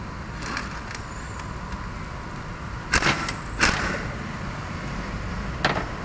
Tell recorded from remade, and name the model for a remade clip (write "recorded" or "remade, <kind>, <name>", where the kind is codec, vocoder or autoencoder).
recorded